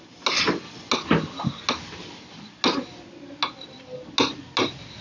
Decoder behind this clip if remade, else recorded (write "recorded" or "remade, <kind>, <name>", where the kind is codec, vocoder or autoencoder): recorded